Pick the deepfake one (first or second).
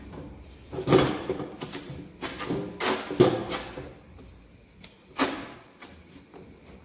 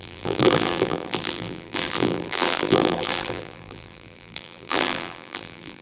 second